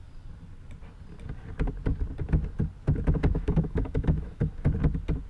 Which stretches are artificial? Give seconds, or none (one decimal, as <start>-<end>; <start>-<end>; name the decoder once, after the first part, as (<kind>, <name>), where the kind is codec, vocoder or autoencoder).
3.3-4.5 (autoencoder, DAC-VAE)